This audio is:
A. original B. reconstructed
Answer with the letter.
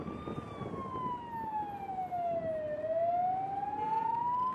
A